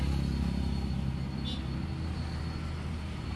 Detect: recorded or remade recorded